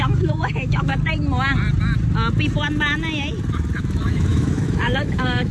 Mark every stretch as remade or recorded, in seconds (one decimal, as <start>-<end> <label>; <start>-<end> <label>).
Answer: 0.0-0.9 remade; 0.9-3.8 recorded; 3.8-5.5 remade